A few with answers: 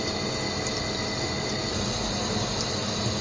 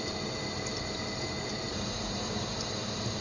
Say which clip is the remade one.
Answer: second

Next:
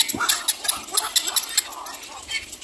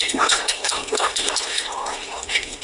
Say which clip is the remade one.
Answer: second